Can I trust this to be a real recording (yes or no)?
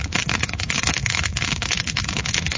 no